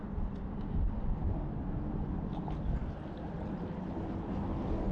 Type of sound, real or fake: real